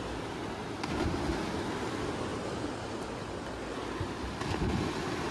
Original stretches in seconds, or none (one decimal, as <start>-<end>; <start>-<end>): 0.0-0.6; 1.5-2.3; 3.1-5.3